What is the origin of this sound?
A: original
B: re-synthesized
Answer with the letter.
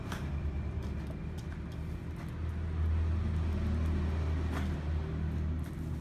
A